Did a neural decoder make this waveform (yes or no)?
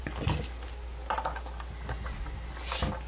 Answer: no